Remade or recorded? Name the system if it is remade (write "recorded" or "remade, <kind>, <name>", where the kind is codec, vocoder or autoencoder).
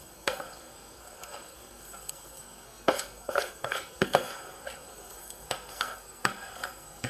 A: remade, codec, SNAC